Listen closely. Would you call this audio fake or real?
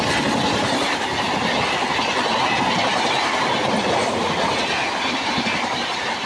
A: real